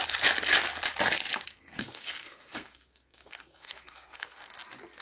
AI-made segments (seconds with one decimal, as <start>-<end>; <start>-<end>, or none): 1.5-4.5